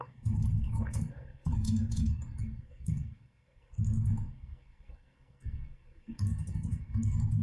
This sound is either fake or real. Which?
fake